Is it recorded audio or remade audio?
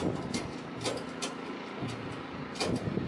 recorded